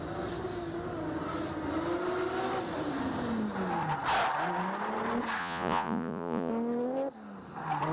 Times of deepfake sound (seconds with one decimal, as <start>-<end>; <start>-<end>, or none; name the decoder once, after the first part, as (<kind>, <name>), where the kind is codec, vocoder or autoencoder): 5.4-6.5 (vocoder, Vocos)